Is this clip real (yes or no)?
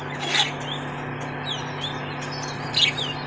yes